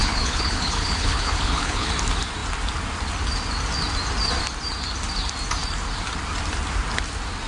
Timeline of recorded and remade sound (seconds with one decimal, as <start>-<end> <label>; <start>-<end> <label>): 0.0-1.9 remade; 1.9-7.5 recorded